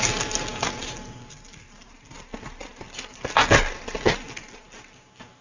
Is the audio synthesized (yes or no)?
no